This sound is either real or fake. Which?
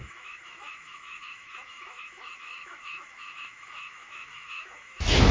fake